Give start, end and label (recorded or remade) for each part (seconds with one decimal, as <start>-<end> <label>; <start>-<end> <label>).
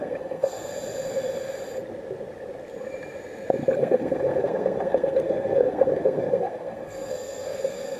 0.0-0.7 remade; 0.7-3.8 recorded; 3.8-8.0 remade